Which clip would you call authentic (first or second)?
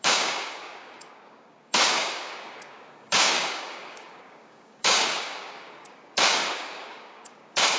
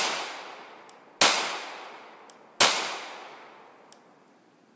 second